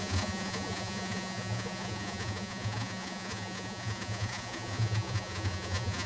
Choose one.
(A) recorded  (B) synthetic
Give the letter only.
B